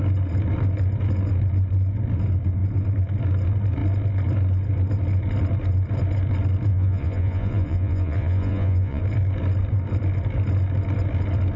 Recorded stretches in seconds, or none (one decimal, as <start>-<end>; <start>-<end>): 0.0-6.7; 9.0-11.6